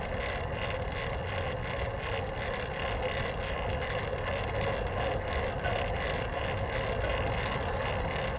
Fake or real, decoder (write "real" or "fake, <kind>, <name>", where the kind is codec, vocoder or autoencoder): real